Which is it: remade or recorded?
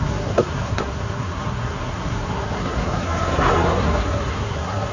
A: remade